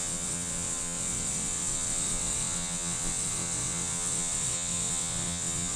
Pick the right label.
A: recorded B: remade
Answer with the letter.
B